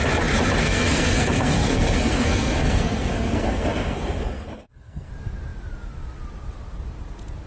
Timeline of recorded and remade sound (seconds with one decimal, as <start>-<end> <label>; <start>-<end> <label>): 0.0-0.6 recorded; 0.6-5.1 remade; 5.1-7.5 recorded

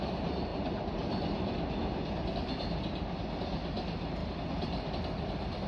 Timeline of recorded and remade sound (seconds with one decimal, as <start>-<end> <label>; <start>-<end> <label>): 0.0-5.7 recorded

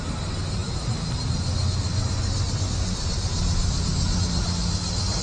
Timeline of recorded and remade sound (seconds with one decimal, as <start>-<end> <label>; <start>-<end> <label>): 0.0-5.2 recorded

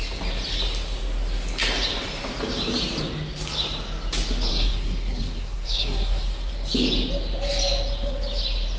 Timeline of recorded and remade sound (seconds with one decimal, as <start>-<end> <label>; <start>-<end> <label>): 0.0-4.5 recorded; 4.5-6.5 remade; 6.5-8.8 recorded

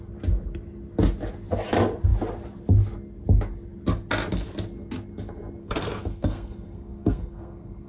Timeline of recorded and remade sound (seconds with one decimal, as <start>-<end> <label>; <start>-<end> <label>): 0.0-5.6 recorded; 5.6-7.9 remade

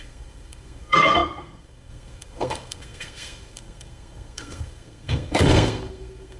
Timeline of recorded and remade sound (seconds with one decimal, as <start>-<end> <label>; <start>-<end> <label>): 0.0-6.4 remade

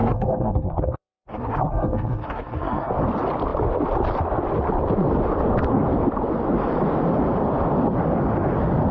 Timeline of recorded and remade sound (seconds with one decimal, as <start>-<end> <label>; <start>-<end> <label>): 0.0-2.9 remade; 2.9-8.9 recorded

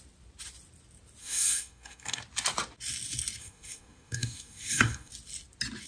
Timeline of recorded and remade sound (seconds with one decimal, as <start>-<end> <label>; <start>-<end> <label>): 0.0-1.2 recorded; 1.2-2.2 remade; 2.2-3.4 recorded; 3.4-5.1 remade; 5.1-5.9 recorded